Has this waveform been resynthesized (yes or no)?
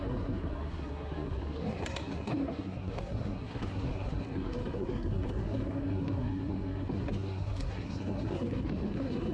yes